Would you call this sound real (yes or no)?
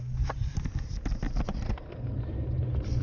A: yes